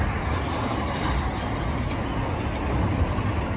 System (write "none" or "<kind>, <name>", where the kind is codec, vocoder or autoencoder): none